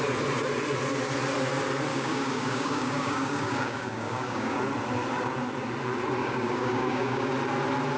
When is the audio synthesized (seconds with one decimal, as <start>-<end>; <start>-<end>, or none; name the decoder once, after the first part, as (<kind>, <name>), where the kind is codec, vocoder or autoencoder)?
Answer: 1.9-4.6 (codec, DAC); 6.2-7.3